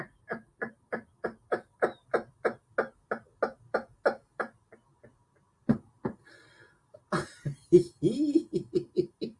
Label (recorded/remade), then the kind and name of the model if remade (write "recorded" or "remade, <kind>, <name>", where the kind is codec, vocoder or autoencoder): recorded